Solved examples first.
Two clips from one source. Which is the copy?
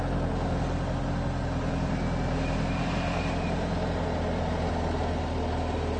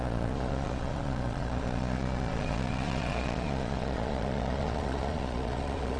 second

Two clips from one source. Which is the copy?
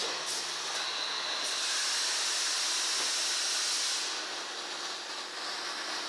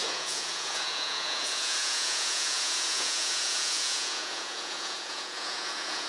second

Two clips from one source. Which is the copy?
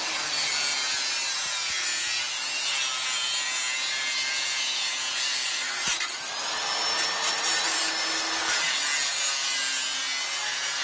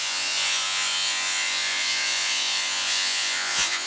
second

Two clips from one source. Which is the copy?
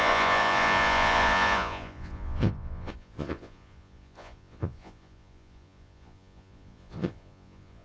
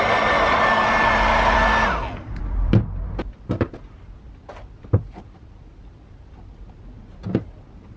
first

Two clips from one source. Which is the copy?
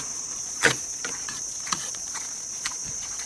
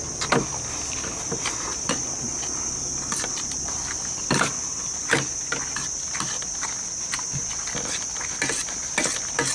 first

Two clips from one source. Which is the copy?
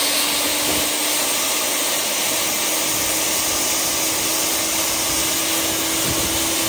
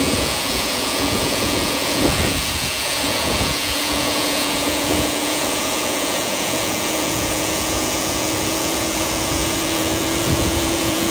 second